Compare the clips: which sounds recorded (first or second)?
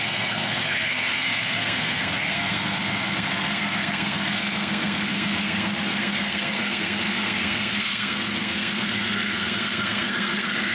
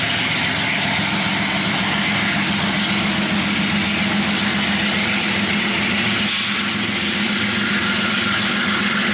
second